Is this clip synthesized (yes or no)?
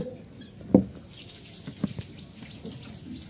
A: no